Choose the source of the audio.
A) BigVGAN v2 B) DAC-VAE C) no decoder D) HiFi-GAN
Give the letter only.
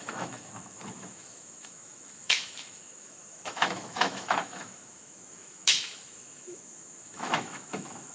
B